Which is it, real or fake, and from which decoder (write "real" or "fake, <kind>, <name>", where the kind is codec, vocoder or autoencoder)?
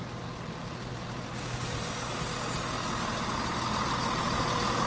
real